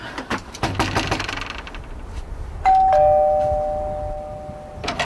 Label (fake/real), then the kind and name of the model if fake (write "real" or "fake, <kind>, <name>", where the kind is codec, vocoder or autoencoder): real